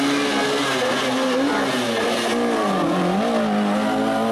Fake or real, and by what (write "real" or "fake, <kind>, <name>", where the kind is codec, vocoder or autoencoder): real